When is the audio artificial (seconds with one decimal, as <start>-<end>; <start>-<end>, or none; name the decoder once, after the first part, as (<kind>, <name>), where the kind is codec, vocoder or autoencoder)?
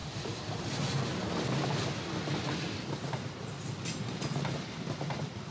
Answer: none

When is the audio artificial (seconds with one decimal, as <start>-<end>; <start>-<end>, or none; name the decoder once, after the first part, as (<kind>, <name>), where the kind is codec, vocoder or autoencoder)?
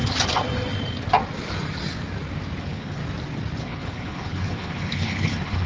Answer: 2.6-3.0 (codec, HILCodec); 3.6-5.7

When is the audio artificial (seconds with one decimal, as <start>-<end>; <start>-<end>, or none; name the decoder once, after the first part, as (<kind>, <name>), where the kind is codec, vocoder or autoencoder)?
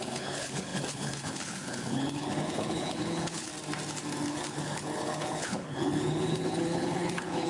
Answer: 0.0-3.5 (codec, HILCodec); 4.3-7.5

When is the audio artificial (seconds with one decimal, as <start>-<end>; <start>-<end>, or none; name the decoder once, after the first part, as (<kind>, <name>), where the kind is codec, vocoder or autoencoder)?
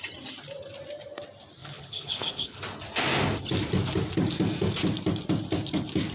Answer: 1.6-2.6 (codec, HILCodec)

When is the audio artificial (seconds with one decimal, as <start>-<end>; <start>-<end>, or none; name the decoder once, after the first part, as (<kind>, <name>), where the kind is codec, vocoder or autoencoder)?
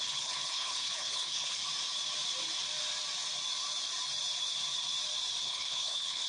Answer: 0.0-1.6 (codec, HILCodec); 5.4-6.3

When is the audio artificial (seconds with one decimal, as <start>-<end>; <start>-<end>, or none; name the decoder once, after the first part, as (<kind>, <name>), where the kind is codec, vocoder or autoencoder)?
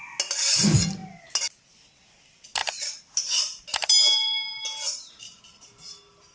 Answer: none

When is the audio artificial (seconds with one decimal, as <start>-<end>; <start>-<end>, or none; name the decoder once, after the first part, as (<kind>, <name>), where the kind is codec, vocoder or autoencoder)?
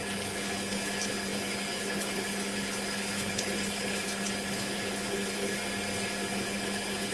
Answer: 0.0-5.6 (codec, HILCodec); 6.3-7.1